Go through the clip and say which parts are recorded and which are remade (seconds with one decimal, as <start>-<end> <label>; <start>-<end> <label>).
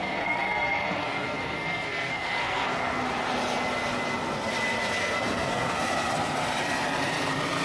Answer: 0.0-3.0 remade; 3.0-5.0 recorded; 5.0-5.8 remade; 5.8-7.6 recorded